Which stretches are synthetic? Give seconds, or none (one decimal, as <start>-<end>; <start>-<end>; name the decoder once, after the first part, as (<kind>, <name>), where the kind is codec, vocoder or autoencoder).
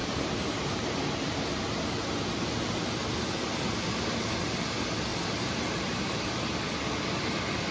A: 0.0-1.6 (vocoder, BigVGAN v2); 5.1-6.5